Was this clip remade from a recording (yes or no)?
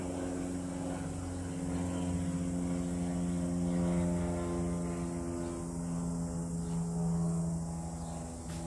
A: no